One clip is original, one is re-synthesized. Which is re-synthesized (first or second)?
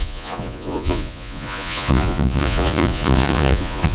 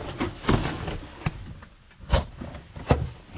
first